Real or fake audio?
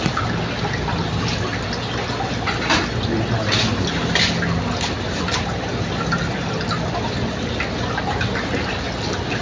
real